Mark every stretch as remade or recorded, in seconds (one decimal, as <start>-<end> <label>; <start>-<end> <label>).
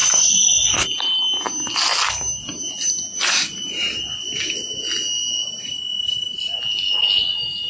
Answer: 0.0-0.9 remade; 0.9-1.9 recorded; 1.9-4.5 remade; 4.5-7.7 recorded